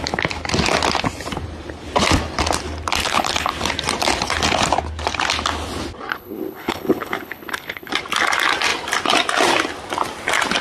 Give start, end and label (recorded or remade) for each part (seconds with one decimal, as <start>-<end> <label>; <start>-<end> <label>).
0.0-3.0 recorded; 3.0-3.5 remade; 3.5-6.1 recorded; 6.1-7.9 remade; 7.9-10.6 recorded